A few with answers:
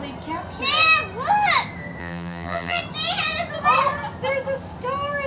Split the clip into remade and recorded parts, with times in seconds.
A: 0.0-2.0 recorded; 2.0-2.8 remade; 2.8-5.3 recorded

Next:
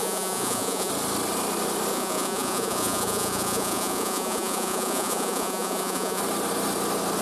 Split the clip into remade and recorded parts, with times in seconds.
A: 0.0-0.9 remade; 0.9-1.9 recorded; 1.9-6.2 remade; 6.2-7.2 recorded

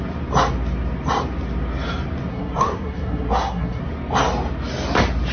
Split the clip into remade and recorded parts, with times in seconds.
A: 0.0-2.3 recorded; 2.3-3.8 remade; 3.8-5.3 recorded

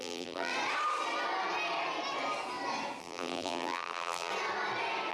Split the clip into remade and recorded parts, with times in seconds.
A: 0.0-0.5 remade; 0.5-3.0 recorded; 3.0-4.3 remade; 4.3-5.1 recorded